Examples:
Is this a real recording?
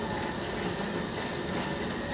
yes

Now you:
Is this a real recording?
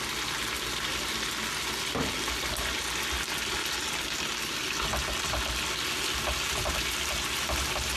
yes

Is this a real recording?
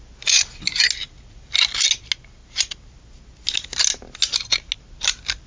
yes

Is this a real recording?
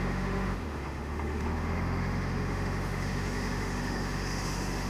no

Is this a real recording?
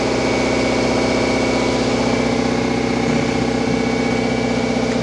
yes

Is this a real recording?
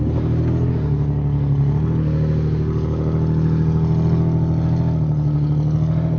yes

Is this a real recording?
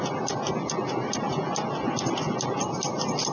yes